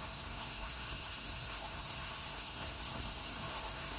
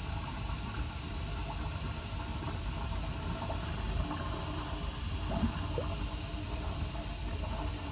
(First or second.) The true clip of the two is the second